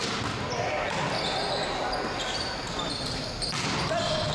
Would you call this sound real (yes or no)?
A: yes